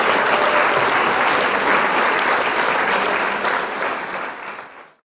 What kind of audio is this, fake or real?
real